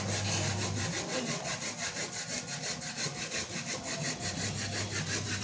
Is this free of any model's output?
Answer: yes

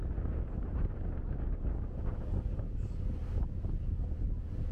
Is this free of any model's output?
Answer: yes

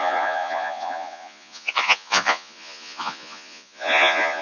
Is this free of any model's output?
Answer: no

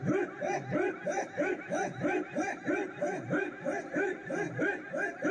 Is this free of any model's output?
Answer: yes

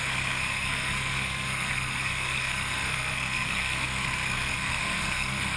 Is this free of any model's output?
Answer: no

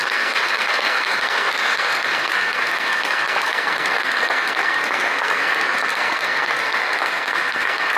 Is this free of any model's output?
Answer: no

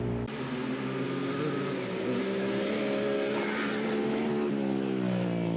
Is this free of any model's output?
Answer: yes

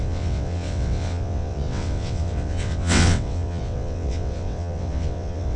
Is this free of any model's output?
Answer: no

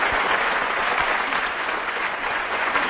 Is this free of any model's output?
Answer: no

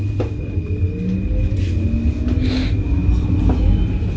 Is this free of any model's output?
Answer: yes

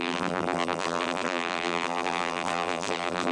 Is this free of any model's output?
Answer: no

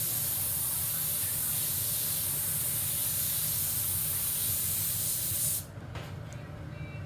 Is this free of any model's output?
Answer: yes